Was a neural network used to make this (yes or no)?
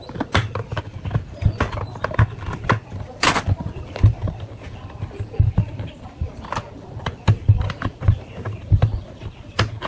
no